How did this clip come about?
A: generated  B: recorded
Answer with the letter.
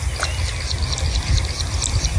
B